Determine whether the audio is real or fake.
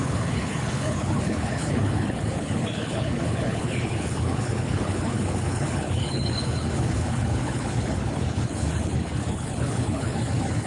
fake